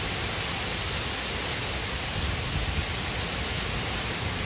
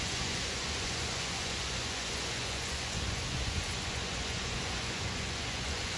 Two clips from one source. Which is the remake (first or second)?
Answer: second